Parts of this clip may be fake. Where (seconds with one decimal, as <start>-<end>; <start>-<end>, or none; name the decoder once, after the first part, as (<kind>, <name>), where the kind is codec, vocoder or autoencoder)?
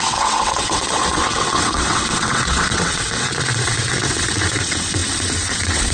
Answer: 0.0-5.9 (vocoder, WaveNeXt)